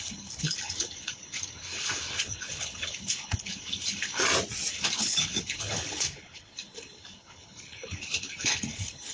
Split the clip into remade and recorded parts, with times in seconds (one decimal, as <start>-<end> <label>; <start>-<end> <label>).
0.0-4.2 remade; 4.2-4.7 recorded; 4.7-9.1 remade